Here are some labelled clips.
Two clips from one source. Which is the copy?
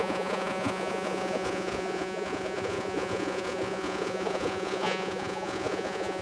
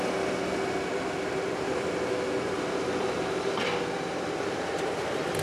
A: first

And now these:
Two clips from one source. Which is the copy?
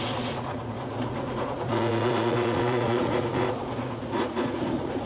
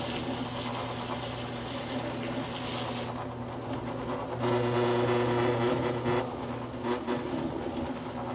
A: first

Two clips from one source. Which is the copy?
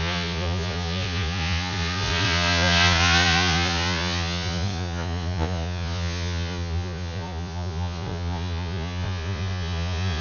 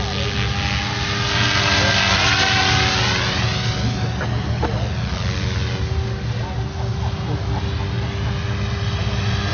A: first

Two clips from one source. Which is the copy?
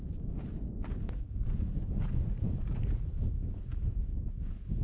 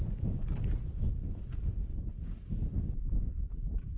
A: first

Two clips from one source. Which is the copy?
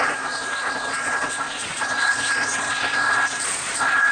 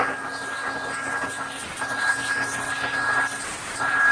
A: first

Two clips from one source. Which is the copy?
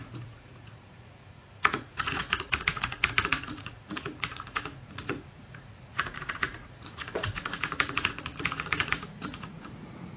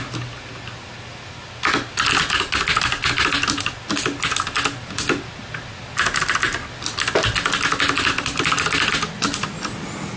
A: first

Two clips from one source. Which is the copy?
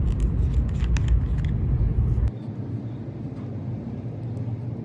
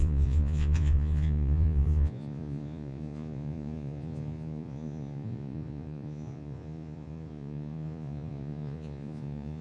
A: second